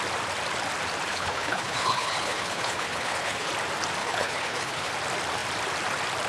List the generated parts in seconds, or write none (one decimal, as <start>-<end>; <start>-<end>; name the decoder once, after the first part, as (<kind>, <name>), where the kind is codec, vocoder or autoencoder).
1.1-3.5 (codec, HILCodec); 4.0-4.9